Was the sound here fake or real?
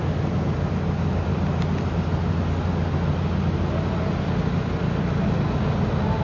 real